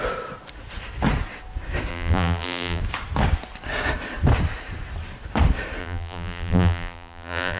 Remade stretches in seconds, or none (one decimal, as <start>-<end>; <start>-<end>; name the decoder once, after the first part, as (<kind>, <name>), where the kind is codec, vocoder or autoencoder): 1.9-2.8 (vocoder, BigVGAN v2); 5.8-7.6